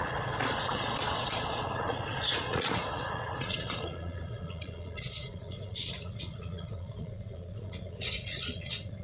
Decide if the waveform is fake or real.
fake